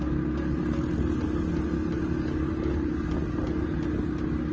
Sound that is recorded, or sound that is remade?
recorded